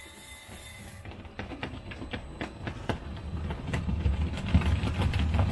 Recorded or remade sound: recorded